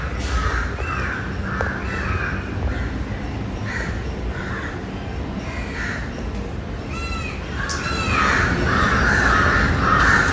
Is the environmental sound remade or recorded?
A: recorded